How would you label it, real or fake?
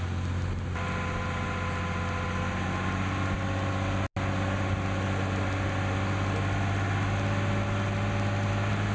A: real